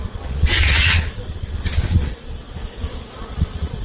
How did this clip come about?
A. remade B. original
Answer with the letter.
A